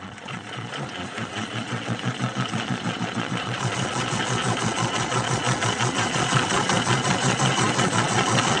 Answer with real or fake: fake